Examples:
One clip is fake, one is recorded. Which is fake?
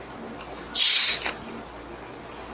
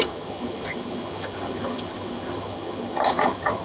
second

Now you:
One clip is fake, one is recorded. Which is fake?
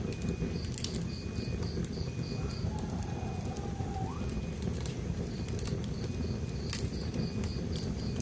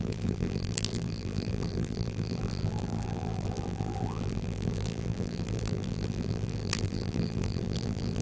second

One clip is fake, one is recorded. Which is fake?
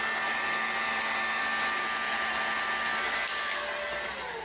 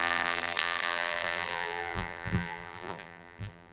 second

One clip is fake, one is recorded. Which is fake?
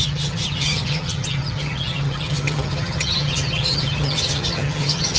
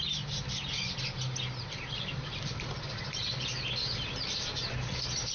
first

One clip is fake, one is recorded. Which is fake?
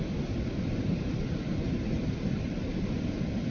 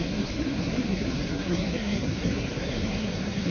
second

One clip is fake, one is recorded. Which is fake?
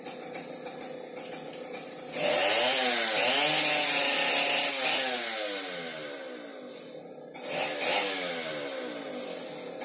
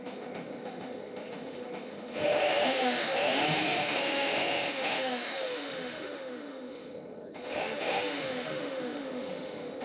second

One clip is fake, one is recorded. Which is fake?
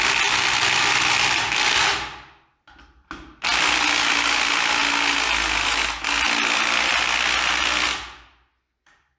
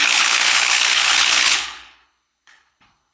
second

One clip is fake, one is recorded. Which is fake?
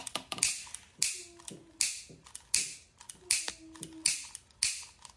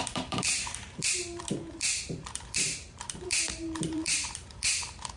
second